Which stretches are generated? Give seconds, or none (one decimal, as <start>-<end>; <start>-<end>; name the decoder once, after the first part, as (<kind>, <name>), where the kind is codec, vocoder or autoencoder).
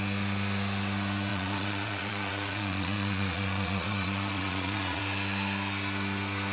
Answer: 1.3-5.0 (vocoder, Vocos)